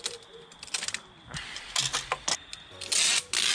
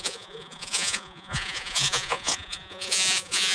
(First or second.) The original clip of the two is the first